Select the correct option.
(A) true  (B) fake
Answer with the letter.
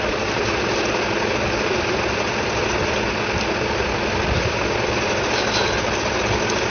A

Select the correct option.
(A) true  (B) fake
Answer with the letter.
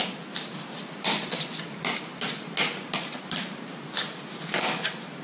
A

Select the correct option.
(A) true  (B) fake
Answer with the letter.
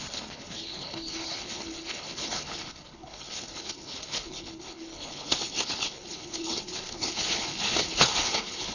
B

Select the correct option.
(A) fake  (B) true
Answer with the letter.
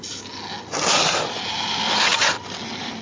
B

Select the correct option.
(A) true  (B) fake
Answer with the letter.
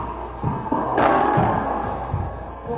B